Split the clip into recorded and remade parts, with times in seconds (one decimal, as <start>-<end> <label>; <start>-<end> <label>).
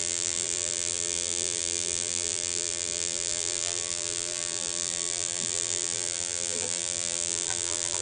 0.0-8.0 remade